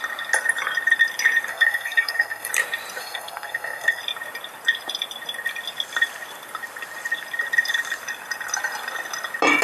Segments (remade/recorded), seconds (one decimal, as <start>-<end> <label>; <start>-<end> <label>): 0.0-1.5 recorded; 1.5-2.5 remade; 2.5-3.0 recorded; 3.0-4.0 remade; 4.0-9.6 recorded